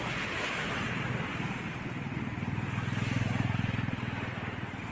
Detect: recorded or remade recorded